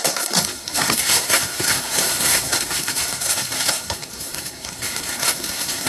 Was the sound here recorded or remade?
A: remade